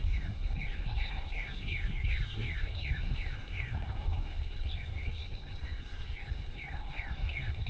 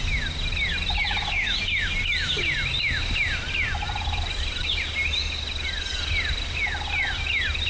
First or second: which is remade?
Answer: first